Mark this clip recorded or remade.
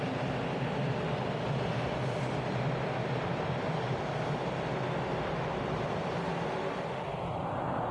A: recorded